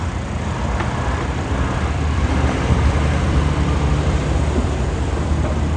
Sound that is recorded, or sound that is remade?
remade